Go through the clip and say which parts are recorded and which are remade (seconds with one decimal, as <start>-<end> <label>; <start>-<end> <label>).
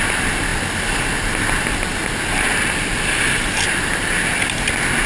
0.0-5.1 recorded